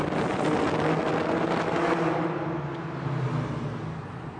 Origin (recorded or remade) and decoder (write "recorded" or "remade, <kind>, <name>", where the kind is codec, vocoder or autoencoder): recorded